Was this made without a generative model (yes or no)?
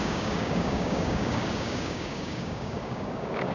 no